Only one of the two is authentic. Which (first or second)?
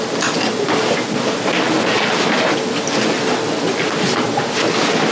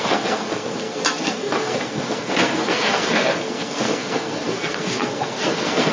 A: first